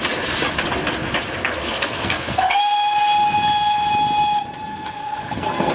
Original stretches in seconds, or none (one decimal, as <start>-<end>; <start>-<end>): 0.0-1.4; 2.6-4.7